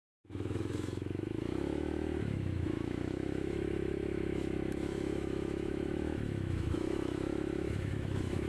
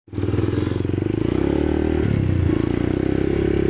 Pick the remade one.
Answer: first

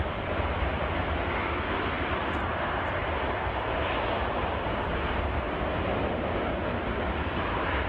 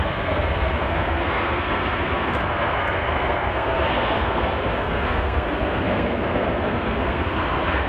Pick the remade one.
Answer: second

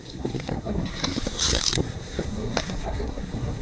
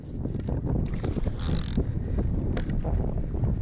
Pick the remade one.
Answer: first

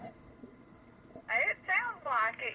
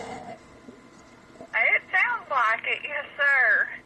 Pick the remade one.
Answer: first